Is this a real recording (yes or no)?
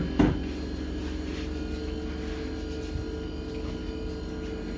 yes